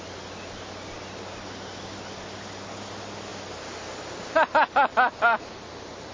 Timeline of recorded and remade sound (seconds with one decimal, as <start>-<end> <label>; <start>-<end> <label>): 0.0-6.1 recorded

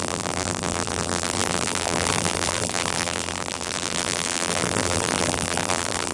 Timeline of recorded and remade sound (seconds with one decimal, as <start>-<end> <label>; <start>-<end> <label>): 0.0-6.1 remade

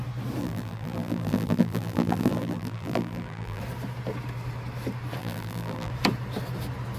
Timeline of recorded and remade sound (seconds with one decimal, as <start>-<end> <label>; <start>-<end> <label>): 0.0-0.4 recorded; 0.4-3.6 remade; 3.6-5.2 recorded; 5.2-5.9 remade; 5.9-7.0 recorded

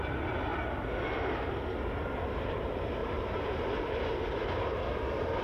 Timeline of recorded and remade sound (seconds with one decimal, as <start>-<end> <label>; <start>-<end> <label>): 0.0-0.5 recorded; 0.5-1.2 remade; 1.2-3.0 recorded; 3.0-4.8 remade; 4.8-5.4 recorded